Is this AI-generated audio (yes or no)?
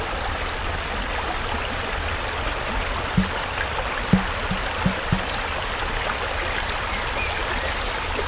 no